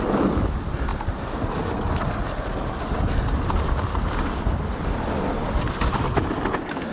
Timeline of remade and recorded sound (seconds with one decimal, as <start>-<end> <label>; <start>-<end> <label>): 0.0-6.9 recorded